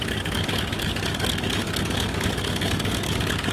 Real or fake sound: fake